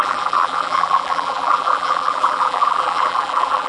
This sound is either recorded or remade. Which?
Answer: remade